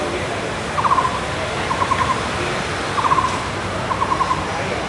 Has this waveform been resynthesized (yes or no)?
no